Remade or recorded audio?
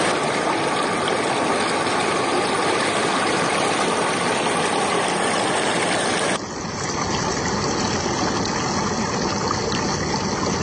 recorded